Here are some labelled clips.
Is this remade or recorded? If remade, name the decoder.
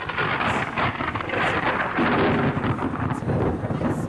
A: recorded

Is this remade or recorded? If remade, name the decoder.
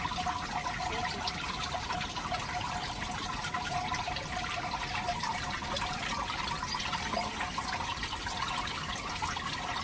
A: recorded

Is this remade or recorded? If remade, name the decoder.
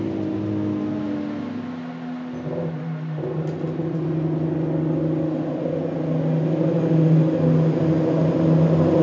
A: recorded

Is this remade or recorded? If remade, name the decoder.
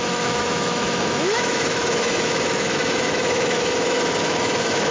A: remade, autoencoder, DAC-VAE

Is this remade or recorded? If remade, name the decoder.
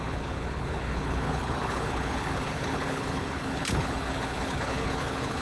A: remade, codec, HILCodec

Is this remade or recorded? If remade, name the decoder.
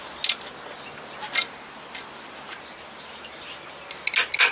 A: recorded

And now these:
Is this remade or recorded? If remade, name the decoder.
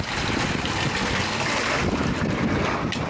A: recorded